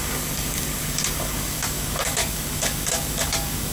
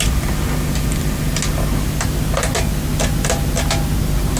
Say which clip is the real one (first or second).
second